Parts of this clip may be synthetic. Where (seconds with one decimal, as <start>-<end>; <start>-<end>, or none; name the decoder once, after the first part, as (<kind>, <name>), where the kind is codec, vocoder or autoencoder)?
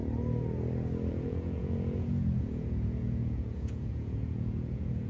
1.1-5.1 (vocoder, Vocos)